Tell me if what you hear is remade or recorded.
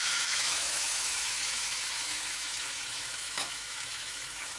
remade